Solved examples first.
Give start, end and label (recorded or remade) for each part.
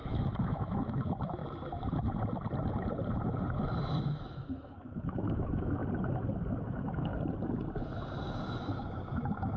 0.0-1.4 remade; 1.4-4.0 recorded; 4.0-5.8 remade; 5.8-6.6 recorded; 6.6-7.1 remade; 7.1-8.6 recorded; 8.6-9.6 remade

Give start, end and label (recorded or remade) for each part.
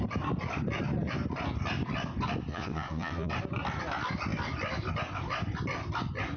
0.0-2.5 recorded; 2.5-3.3 remade; 3.3-6.4 recorded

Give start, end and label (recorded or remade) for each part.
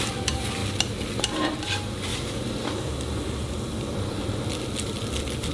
0.0-5.5 recorded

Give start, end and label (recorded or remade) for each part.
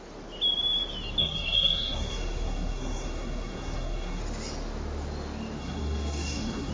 0.0-1.2 recorded; 1.2-4.2 remade; 4.2-5.6 recorded; 5.6-6.7 remade